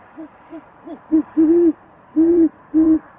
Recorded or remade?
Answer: remade